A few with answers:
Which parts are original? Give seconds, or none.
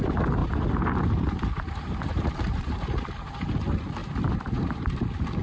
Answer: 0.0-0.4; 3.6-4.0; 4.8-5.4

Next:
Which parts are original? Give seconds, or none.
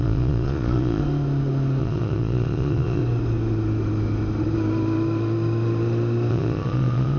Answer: 1.0-1.8; 3.0-6.3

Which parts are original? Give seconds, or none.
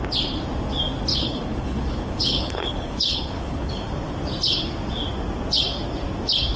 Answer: 0.0-1.1; 3.7-6.6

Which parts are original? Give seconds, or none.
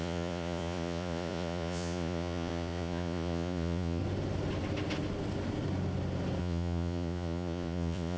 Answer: 4.0-6.4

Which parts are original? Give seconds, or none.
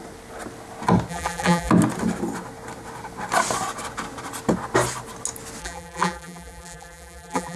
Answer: 0.0-1.1; 1.7-5.6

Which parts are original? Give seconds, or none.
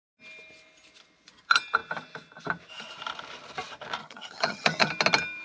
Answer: 0.0-4.0; 4.9-5.4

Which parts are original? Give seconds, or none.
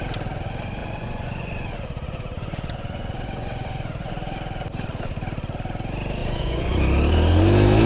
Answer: 0.0-0.8; 4.1-6.2; 6.8-7.9